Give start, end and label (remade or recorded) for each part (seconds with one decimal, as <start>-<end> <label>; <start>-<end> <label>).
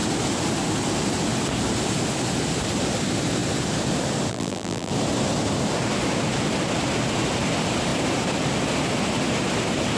0.0-4.3 recorded; 4.3-4.9 remade; 4.9-10.0 recorded